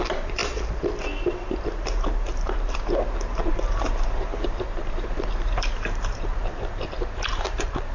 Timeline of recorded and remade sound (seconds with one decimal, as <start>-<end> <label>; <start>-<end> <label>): 0.0-0.4 remade; 0.4-1.6 recorded; 1.6-6.3 remade; 6.3-6.8 recorded; 6.8-7.9 remade